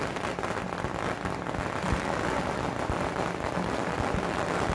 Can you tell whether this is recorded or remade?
recorded